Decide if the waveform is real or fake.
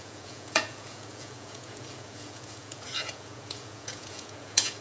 fake